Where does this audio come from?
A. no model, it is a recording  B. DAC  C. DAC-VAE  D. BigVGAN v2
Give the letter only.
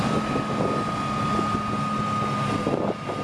A